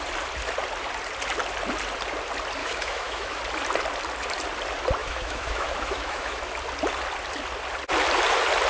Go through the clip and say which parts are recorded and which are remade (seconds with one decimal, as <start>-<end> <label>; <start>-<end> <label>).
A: 0.0-2.6 recorded; 2.6-3.4 remade; 3.4-5.0 recorded; 5.0-6.4 remade; 6.4-8.7 recorded

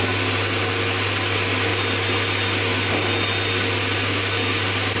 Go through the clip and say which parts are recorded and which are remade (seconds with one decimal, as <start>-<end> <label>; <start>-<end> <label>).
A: 0.0-5.0 recorded

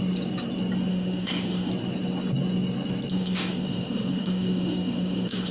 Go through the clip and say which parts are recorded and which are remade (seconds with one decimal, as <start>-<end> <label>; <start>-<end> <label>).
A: 0.0-0.9 recorded; 0.9-1.7 remade; 1.7-3.1 recorded; 3.1-5.5 remade

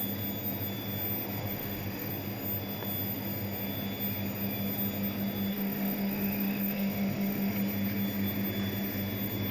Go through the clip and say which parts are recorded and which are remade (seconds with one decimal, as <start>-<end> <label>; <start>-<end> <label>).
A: 0.0-1.4 recorded; 1.4-2.1 remade; 2.1-5.5 recorded; 5.5-7.5 remade; 7.5-9.5 recorded

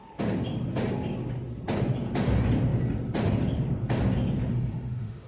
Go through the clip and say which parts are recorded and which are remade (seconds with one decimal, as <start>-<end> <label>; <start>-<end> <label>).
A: 0.0-4.5 recorded; 4.5-5.3 remade

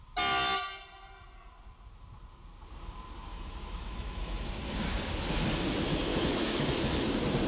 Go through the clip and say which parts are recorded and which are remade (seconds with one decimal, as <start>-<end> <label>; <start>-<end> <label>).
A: 0.0-3.3 recorded; 3.3-4.5 remade; 4.5-6.1 recorded; 6.1-7.1 remade; 7.1-7.5 recorded